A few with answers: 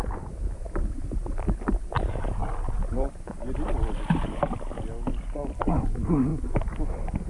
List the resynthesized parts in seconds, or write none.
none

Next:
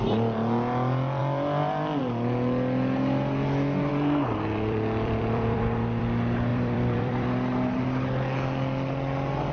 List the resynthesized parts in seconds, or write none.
1.2-2.0 (vocoder, BigVGAN v2); 3.9-6.0; 6.5-7.8

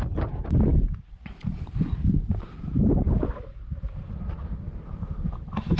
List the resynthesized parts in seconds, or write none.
none

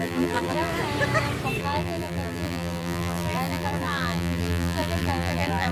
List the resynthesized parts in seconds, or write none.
0.0-0.7 (vocoder, BigVGAN v2); 1.6-5.7

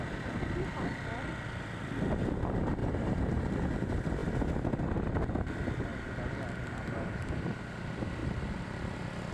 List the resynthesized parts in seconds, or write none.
2.8-3.4 (vocoder, BigVGAN v2)

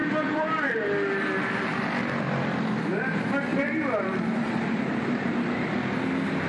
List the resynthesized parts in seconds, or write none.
0.0-0.7 (vocoder, BigVGAN v2); 3.5-5.5

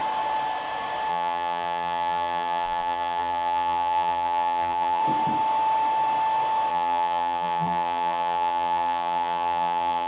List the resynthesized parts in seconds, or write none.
1.1-5.0 (vocoder, BigVGAN v2); 6.7-10.1